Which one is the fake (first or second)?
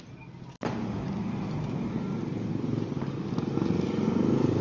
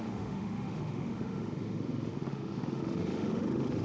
second